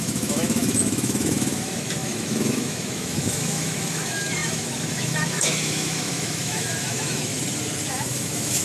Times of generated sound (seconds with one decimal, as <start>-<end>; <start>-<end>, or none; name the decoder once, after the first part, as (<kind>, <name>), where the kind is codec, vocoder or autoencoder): 0.0-7.3 (autoencoder, DAC-VAE); 7.9-8.6

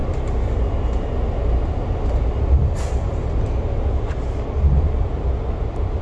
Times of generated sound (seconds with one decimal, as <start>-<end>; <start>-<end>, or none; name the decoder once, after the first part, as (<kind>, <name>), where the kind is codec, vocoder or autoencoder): none

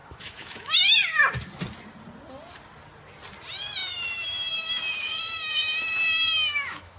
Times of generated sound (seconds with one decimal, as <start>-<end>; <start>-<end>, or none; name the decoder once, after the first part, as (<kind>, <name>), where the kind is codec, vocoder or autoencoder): 0.0-0.8 (autoencoder, DAC-VAE); 3.8-7.0